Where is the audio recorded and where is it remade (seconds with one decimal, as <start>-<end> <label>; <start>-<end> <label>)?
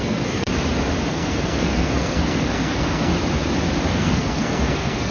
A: 0.0-0.5 remade; 0.5-1.1 recorded; 1.1-3.1 remade; 3.1-3.9 recorded; 3.9-5.1 remade